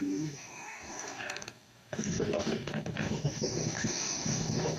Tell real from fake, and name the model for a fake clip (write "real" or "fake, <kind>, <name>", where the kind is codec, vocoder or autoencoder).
fake, codec, DAC